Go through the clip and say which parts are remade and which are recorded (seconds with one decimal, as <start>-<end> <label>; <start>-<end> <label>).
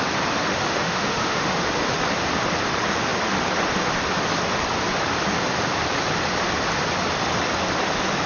0.0-0.7 recorded; 0.7-1.6 remade; 1.6-8.3 recorded